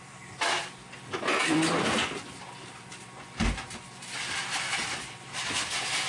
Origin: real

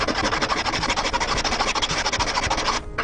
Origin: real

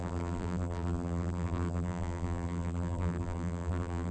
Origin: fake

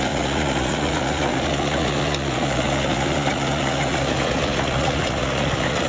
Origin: fake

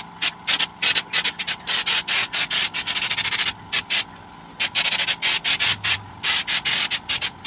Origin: real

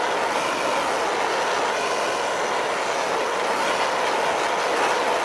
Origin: real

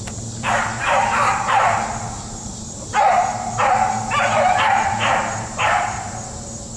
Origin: fake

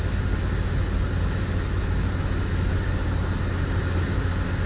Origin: real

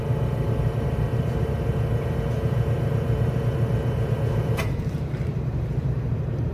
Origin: fake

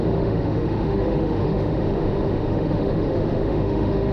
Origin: fake